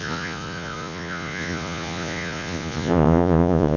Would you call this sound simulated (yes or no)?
yes